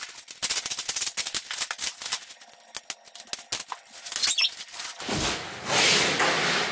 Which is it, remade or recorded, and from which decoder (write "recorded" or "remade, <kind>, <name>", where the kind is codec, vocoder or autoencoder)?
recorded